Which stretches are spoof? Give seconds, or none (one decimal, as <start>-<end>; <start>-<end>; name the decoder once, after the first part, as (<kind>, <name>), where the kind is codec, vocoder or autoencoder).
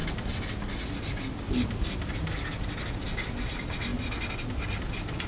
none